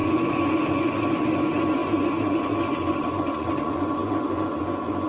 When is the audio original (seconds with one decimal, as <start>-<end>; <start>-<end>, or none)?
none